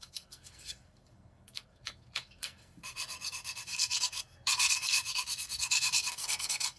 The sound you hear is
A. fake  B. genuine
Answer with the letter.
A